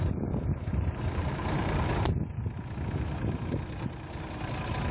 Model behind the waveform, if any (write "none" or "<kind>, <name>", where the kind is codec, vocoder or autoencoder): none